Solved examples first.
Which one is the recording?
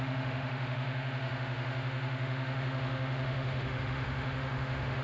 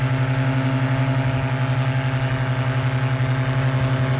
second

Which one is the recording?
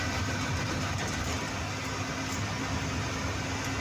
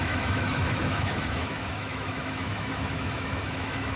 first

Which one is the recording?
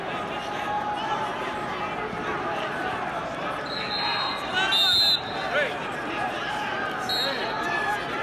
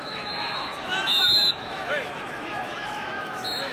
first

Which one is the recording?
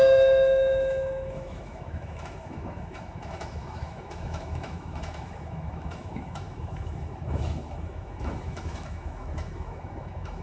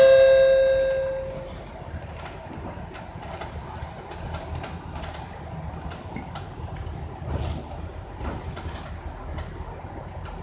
second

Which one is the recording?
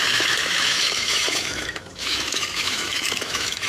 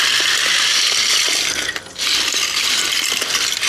second